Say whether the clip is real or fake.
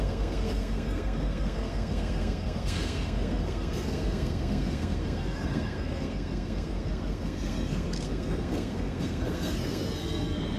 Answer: fake